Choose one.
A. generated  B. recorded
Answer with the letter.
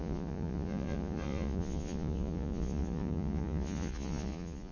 A